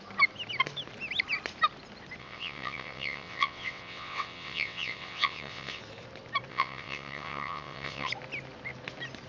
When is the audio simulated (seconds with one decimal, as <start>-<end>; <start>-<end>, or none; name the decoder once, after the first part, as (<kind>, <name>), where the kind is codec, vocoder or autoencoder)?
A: 2.2-5.8 (vocoder, WaveNeXt); 6.5-8.1